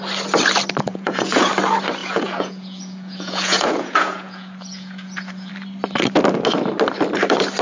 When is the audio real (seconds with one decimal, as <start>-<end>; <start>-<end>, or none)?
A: 0.0-0.9; 1.5-2.0; 5.5-7.6